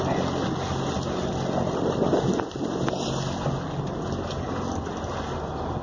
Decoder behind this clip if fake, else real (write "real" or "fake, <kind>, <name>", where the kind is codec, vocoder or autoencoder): real